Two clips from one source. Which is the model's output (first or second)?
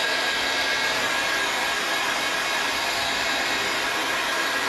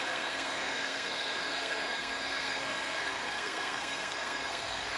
second